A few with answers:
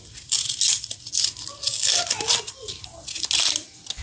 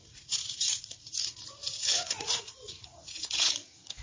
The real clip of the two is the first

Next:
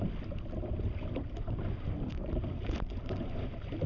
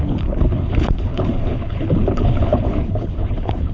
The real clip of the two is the first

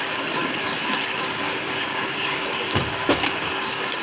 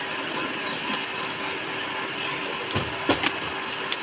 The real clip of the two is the second